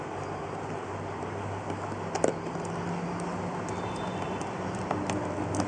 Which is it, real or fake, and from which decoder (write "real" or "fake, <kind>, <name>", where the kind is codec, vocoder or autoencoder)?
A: real